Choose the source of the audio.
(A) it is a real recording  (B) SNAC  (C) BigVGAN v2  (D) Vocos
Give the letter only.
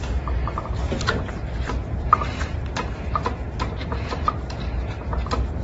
A